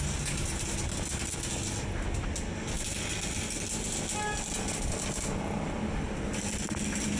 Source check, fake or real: real